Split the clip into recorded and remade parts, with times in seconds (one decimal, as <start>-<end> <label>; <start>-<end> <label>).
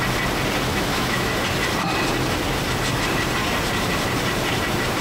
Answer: 0.0-0.7 recorded; 0.7-1.3 remade; 1.3-5.0 recorded